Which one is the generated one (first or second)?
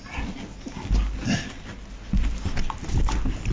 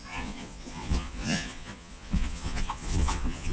second